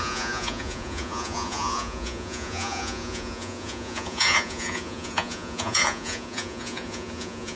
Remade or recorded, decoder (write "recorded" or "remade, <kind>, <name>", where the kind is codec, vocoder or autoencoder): remade, vocoder, Vocos